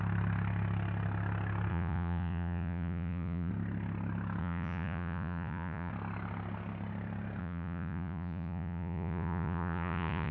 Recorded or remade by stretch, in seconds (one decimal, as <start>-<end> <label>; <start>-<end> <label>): 0.0-1.7 recorded; 1.7-3.5 remade; 3.5-4.4 recorded; 4.4-5.9 remade; 5.9-7.4 recorded; 7.4-10.3 remade